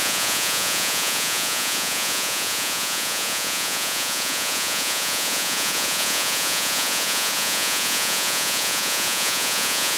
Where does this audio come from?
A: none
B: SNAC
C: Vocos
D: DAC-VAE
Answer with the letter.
C